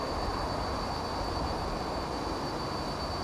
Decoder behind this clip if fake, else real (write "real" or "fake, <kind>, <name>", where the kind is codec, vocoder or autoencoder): real